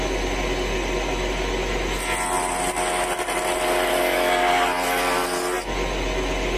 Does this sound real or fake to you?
real